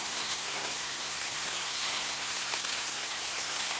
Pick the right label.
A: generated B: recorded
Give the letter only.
A